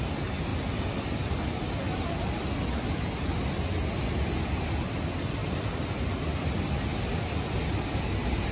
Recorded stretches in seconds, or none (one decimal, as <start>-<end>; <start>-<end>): 0.0-8.5